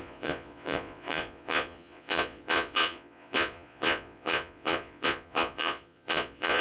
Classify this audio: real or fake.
fake